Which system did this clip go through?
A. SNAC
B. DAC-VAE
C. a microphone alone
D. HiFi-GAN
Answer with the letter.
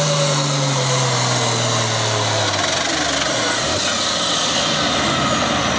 C